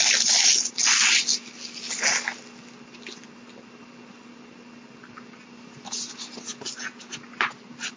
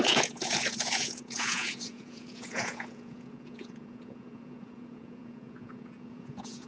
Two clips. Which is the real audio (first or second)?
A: first